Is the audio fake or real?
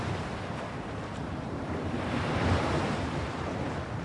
fake